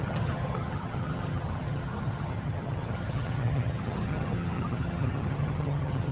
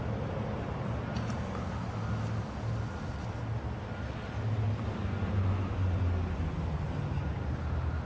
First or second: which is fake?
first